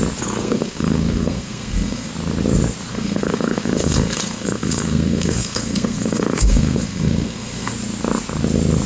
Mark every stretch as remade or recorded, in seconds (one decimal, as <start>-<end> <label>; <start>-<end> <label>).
0.0-0.4 recorded; 0.4-2.1 remade; 2.1-2.9 recorded; 2.9-7.7 remade; 7.7-8.9 recorded